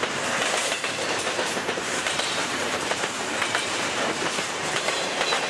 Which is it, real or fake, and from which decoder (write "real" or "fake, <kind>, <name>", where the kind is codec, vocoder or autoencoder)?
fake, vocoder, BigVGAN v2